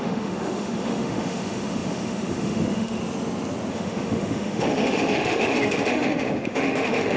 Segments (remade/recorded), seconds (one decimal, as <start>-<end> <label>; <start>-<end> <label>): 0.0-3.0 remade; 3.0-3.7 recorded; 3.7-7.2 remade